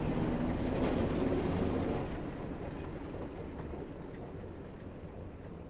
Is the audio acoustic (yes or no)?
yes